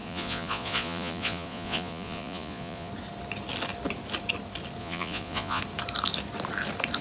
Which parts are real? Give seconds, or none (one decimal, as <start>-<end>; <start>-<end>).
2.9-4.8; 5.6-7.0